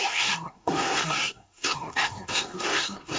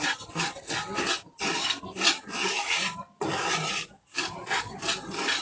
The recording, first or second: second